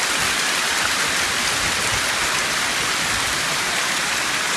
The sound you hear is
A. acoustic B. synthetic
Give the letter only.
A